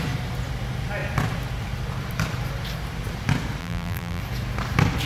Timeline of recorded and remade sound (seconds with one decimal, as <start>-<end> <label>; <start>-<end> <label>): 0.0-3.6 recorded; 3.6-4.2 remade; 4.2-5.1 recorded